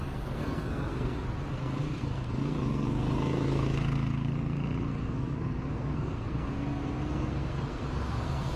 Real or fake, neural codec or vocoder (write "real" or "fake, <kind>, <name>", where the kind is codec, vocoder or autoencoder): fake, codec, SNAC